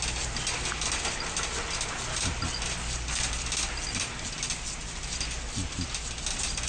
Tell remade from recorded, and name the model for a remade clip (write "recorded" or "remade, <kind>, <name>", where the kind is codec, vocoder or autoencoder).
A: recorded